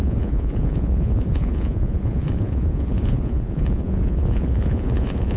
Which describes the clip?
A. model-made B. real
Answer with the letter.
A